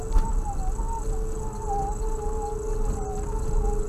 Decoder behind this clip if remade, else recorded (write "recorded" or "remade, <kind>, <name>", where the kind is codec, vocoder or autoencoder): recorded